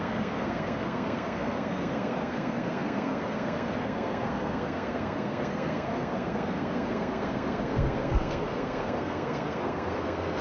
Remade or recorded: remade